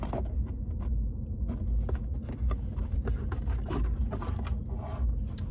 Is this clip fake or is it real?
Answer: real